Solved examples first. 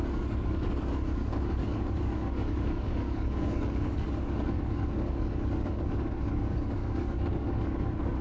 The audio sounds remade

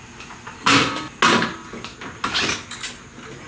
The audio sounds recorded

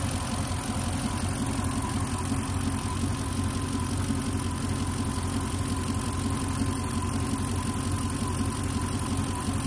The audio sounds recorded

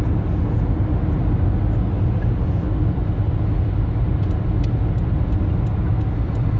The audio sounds recorded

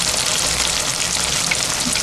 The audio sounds recorded